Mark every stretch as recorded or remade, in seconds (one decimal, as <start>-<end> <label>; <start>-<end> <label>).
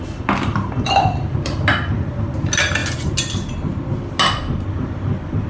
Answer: 0.0-5.5 recorded